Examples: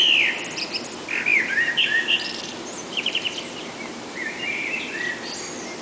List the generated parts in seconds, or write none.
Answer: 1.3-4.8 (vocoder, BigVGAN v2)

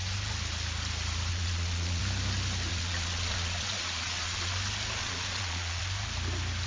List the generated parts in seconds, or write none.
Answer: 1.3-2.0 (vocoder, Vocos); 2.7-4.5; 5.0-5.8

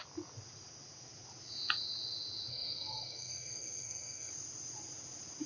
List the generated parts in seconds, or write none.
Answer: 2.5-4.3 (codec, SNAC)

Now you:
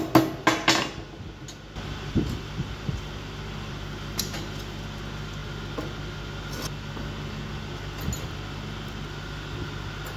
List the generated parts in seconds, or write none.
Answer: none